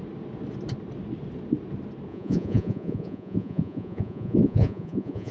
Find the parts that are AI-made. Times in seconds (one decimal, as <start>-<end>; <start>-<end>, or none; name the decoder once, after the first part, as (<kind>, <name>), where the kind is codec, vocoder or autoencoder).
2.1-5.3 (vocoder, Vocos)